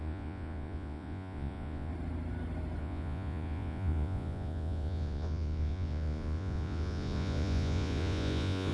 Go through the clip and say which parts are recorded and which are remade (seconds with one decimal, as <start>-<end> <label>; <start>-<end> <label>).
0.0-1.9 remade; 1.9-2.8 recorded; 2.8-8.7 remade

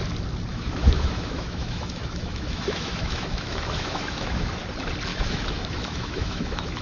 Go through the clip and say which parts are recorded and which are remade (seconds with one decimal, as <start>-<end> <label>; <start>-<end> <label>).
0.0-0.5 recorded; 0.5-4.6 remade; 4.6-5.1 recorded; 5.1-6.8 remade

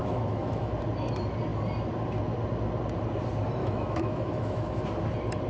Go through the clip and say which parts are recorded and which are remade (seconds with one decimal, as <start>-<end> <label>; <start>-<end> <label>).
0.0-0.7 remade; 0.7-3.6 recorded; 3.6-4.8 remade; 4.8-5.5 recorded

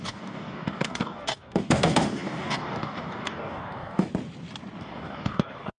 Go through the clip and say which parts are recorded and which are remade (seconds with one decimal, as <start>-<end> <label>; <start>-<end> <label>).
0.0-4.1 remade; 4.1-4.8 recorded; 4.8-5.8 remade

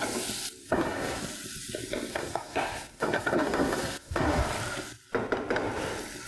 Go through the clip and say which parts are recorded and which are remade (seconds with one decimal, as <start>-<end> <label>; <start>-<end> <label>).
0.0-0.6 recorded; 0.6-1.2 remade; 1.2-2.1 recorded; 2.1-4.4 remade; 4.4-6.3 recorded